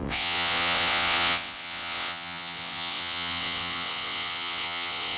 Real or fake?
fake